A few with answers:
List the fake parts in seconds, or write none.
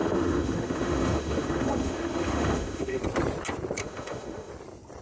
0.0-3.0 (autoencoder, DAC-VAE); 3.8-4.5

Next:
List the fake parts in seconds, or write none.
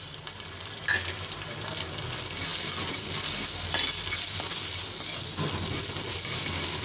none